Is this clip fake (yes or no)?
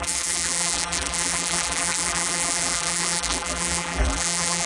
yes